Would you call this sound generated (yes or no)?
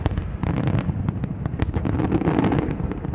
no